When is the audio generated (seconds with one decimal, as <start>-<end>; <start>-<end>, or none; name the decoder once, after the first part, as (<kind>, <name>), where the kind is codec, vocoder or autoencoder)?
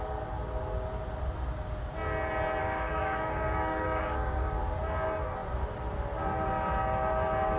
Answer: 2.6-4.6 (codec, DAC)